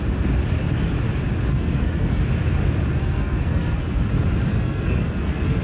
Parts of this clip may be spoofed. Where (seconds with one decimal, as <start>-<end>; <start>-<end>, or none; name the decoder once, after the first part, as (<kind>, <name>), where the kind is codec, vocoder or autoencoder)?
1.5-2.2 (codec, SNAC); 3.0-4.0; 4.5-5.6